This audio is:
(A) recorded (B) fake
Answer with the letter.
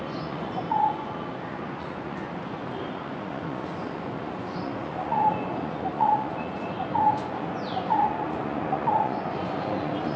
B